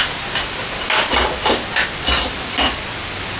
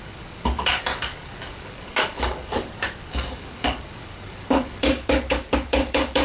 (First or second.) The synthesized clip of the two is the second